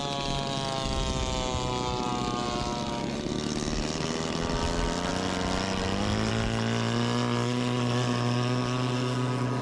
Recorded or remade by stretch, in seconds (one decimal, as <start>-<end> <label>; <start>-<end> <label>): 0.0-9.6 recorded